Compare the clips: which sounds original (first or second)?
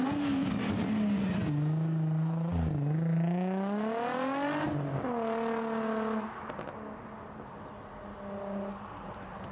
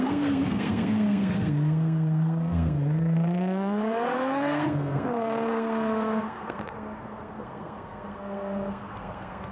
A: first